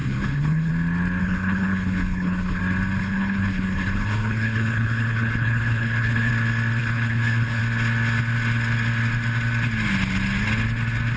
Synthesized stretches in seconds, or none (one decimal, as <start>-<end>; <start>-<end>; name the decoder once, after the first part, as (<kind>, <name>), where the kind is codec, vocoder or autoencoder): 0.0-0.7 (codec, HILCodec); 1.2-2.6; 3.0-6.3; 6.8-7.6